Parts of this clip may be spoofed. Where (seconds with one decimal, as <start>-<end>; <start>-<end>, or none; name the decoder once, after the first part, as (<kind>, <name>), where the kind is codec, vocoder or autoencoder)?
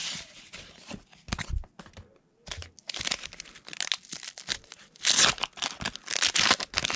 0.0-0.5 (vocoder, BigVGAN v2); 4.5-5.0